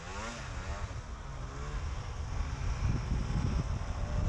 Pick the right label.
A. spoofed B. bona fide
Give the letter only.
B